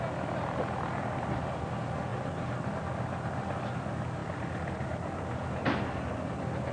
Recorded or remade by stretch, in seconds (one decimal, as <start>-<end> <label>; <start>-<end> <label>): 0.0-6.7 recorded